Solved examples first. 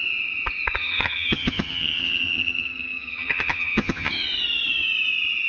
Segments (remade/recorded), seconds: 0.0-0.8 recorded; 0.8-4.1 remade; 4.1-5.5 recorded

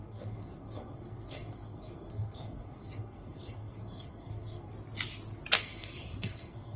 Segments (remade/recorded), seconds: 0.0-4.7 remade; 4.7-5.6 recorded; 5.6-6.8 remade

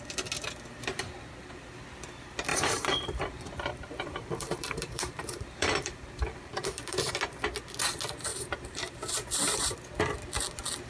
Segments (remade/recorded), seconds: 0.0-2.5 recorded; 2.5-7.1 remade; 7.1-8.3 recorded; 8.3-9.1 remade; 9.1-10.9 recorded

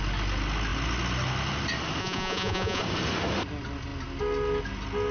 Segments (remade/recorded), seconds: 0.0-2.0 recorded; 2.0-2.8 remade; 2.8-5.1 recorded

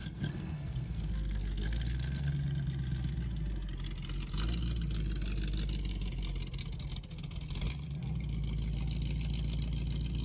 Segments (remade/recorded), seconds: 0.0-2.3 remade; 2.3-10.2 recorded

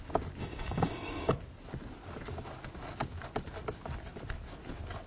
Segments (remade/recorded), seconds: 0.0-0.4 recorded; 0.4-1.3 remade; 1.3-5.1 recorded